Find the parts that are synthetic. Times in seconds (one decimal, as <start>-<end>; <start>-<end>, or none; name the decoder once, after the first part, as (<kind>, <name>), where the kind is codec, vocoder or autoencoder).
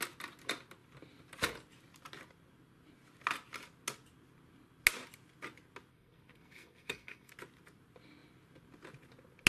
5.9-7.3 (codec, SNAC)